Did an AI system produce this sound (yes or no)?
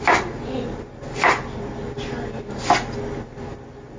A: no